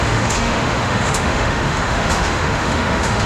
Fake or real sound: fake